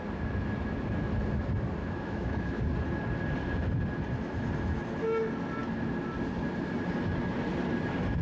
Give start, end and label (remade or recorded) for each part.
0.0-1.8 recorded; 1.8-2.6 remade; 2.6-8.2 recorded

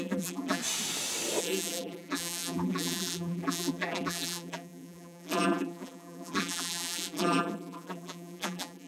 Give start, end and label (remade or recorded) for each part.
0.0-0.6 remade; 0.6-1.4 recorded; 1.4-8.9 remade

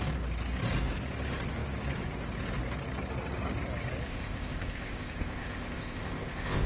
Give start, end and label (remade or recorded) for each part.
0.0-4.1 recorded; 4.1-6.7 remade

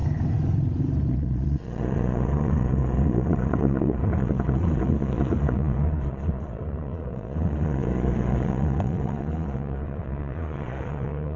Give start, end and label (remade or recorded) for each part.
0.0-1.1 recorded; 1.1-11.4 remade

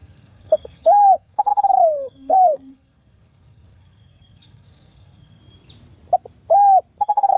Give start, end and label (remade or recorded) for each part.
0.0-5.4 remade; 5.4-7.0 recorded; 7.0-7.4 remade